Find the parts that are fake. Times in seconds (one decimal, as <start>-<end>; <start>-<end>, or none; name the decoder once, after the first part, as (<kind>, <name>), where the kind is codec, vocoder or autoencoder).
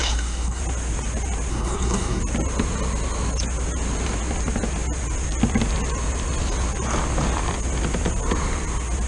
0.0-0.6 (codec, SNAC); 1.5-2.2